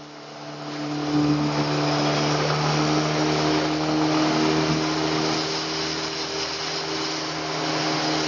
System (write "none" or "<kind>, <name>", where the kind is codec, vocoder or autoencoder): none